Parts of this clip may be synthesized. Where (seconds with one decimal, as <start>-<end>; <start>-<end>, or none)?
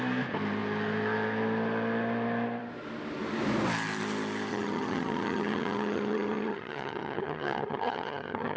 4.5-8.6